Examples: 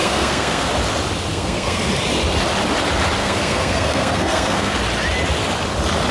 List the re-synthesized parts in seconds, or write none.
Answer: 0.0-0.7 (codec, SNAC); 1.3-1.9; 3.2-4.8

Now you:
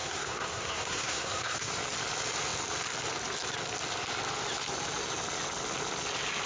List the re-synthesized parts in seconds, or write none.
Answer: 0.0-1.7 (codec, SNAC)

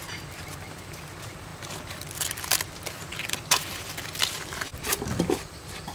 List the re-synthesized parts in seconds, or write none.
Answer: 1.5-2.4 (vocoder, BigVGAN v2); 3.1-3.8; 4.7-5.9

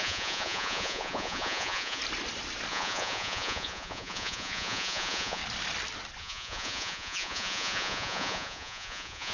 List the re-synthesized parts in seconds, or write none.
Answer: 0.0-2.0 (vocoder, Vocos); 2.7-5.4; 6.2-9.3

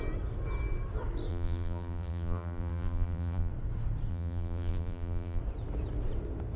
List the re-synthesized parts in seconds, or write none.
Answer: 1.3-3.5 (vocoder, BigVGAN v2); 4.1-5.4

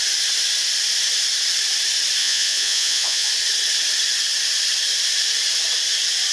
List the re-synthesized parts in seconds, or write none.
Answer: 2.2-3.3 (vocoder, Vocos)

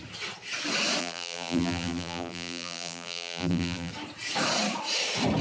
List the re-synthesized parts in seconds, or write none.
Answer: 1.0-3.9 (vocoder, BigVGAN v2)

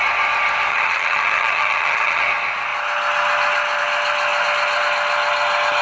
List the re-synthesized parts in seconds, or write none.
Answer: 0.7-2.2 (vocoder, HiFi-GAN)